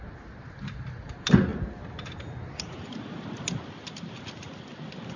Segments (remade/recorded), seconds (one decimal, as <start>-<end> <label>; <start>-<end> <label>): 0.0-5.2 recorded